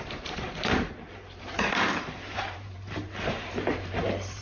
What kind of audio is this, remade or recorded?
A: remade